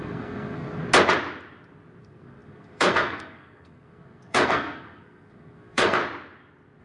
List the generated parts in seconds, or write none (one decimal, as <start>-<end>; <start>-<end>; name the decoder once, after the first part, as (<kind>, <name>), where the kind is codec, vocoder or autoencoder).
0.0-0.8 (codec, SNAC); 2.0-6.0